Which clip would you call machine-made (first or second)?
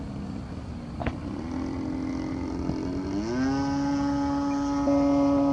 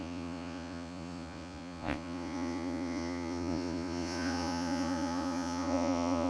second